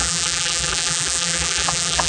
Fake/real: fake